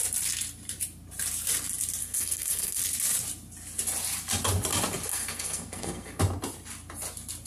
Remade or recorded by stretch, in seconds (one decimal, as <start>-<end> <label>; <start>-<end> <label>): 0.0-2.0 recorded; 2.0-2.8 remade; 2.8-5.1 recorded; 5.1-6.2 remade; 6.2-7.5 recorded